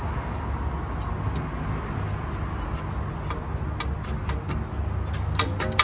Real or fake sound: real